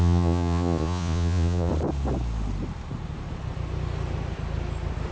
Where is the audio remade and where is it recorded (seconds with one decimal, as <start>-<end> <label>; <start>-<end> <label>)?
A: 0.0-1.7 remade; 1.7-5.1 recorded